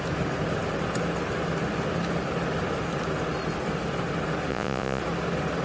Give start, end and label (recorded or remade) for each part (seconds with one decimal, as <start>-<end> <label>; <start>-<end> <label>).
0.0-4.5 recorded; 4.5-5.0 remade; 5.0-5.6 recorded